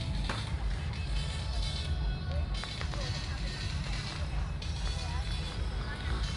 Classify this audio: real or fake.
real